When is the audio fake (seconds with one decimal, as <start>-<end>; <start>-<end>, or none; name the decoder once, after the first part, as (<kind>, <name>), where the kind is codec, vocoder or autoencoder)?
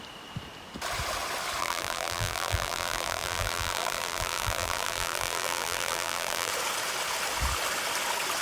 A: 1.6-6.5 (vocoder, BigVGAN v2)